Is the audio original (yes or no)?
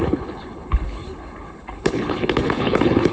no